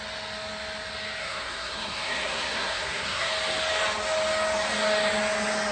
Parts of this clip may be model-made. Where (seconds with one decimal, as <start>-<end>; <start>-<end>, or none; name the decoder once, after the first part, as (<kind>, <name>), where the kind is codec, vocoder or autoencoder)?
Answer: 1.2-3.3 (codec, SNAC)